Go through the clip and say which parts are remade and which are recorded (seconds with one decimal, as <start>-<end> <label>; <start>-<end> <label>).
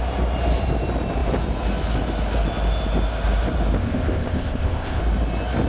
0.0-3.8 recorded; 3.8-5.0 remade; 5.0-5.7 recorded